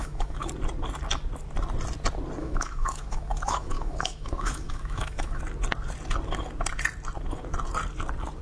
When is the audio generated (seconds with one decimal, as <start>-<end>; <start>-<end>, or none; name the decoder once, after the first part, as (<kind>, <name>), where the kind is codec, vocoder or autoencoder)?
0.0-0.5 (autoencoder, DAC-VAE); 2.4-5.4